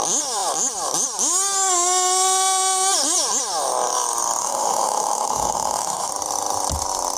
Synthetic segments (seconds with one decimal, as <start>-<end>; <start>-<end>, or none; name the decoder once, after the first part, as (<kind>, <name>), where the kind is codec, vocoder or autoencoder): 4.4-6.1 (autoencoder, DAC-VAE)